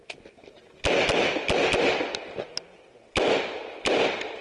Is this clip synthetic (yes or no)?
no